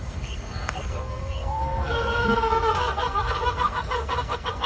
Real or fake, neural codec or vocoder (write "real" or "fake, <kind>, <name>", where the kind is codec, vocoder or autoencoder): fake, codec, SNAC